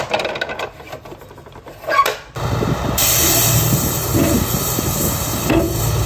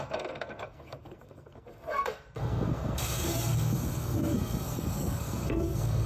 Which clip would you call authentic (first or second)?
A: first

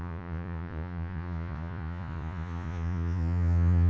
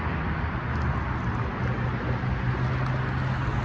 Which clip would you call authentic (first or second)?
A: second